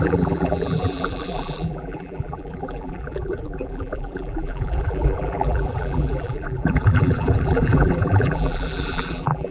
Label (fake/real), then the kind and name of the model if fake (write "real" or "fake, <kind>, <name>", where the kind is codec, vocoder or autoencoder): fake, vocoder, BigVGAN v2